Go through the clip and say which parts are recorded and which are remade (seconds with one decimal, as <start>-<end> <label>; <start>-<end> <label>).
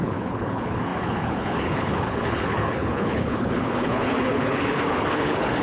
0.0-5.6 remade